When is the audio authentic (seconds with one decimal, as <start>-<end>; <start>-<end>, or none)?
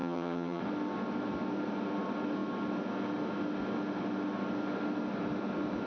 0.6-5.9